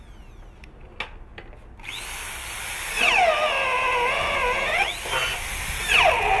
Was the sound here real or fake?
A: real